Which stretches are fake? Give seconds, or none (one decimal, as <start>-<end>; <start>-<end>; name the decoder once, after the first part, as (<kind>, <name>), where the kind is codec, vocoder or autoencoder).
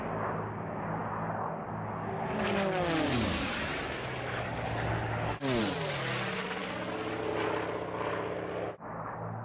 none